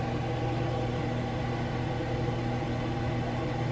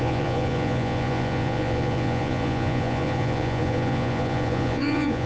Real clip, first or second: first